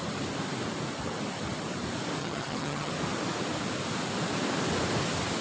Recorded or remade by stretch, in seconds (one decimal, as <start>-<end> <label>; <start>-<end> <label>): 0.0-2.2 recorded; 2.2-2.9 remade; 2.9-5.4 recorded